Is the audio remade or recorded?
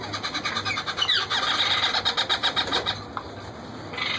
recorded